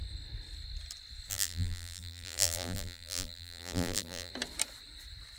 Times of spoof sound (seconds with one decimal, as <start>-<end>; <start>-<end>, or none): 1.3-4.3